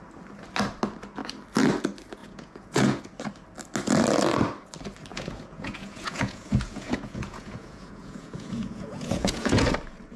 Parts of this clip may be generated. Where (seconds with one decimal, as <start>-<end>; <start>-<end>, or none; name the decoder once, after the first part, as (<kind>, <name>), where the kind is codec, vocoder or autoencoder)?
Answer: 2.2-3.0 (vocoder, Vocos); 5.1-9.7